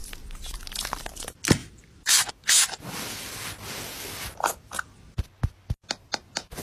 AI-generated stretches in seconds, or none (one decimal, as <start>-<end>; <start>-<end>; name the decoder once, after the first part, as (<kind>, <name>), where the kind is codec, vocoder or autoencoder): 1.6-2.3 (vocoder, BigVGAN v2)